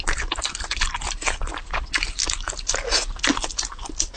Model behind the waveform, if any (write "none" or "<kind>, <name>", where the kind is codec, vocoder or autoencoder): none